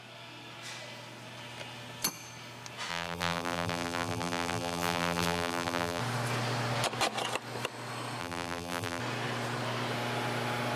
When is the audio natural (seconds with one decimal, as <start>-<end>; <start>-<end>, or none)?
0.0-2.9; 6.0-8.2; 9.0-10.8